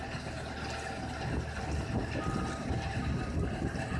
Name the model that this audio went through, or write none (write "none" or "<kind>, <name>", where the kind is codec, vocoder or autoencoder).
none